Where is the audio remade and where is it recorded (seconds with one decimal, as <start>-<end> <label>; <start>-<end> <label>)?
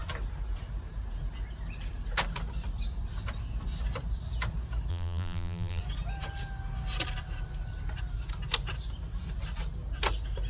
0.0-4.9 recorded; 4.9-5.8 remade; 5.8-10.5 recorded